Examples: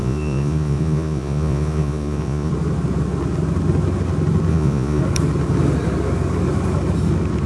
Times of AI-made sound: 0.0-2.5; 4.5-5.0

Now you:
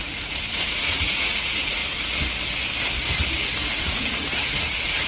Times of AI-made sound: 0.0-1.8; 3.8-5.1

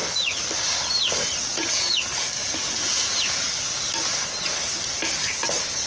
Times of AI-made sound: 1.5-2.0; 2.4-3.4